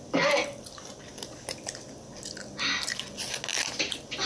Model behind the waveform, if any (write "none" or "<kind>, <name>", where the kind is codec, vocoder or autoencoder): none